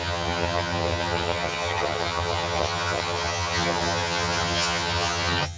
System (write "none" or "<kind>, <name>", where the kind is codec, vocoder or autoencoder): vocoder, HiFi-GAN